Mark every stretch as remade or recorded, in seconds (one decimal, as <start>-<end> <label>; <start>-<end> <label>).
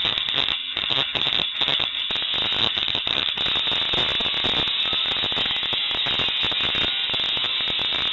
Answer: 0.0-2.1 remade; 2.1-2.6 recorded; 2.6-3.4 remade; 3.4-8.1 recorded